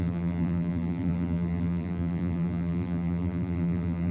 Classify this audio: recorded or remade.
remade